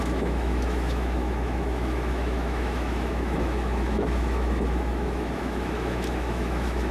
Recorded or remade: remade